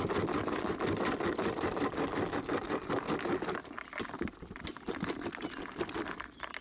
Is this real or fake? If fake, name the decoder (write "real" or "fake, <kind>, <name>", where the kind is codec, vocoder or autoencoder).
real